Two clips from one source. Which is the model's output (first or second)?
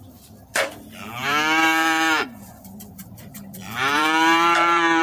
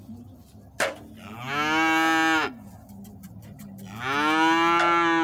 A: first